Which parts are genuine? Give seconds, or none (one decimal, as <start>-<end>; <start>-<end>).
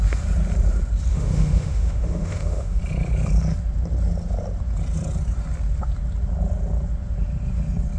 0.0-1.1; 2.8-8.0